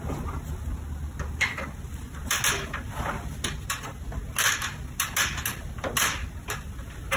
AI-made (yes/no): no